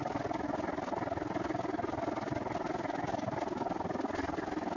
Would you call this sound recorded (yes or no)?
yes